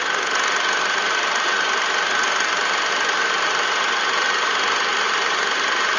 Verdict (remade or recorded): recorded